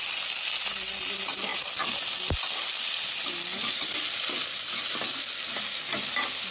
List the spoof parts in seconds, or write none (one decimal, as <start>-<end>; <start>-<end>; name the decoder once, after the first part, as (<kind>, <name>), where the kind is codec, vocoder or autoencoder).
none